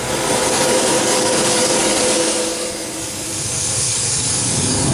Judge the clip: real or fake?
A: fake